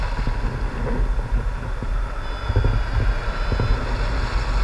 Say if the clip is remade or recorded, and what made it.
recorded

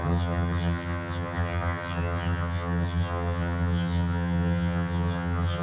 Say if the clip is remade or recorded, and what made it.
remade, vocoder, HiFi-GAN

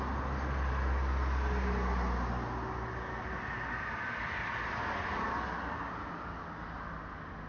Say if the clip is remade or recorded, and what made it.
recorded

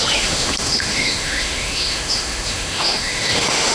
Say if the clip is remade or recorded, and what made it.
remade, autoencoder, DAC-VAE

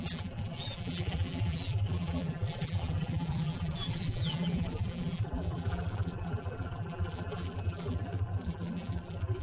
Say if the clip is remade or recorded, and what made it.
remade, vocoder, BigVGAN v2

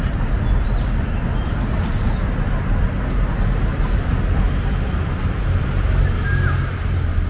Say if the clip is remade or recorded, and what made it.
recorded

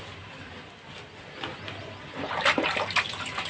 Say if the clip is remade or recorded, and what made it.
recorded